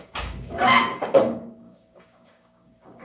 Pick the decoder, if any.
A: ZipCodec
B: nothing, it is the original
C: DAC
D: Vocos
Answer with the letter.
C